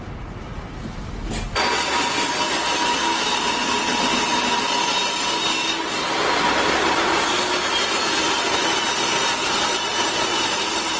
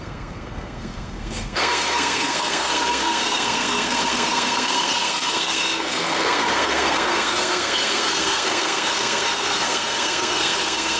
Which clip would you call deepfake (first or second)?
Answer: second